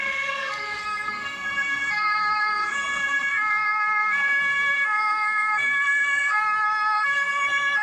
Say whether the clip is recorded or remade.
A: remade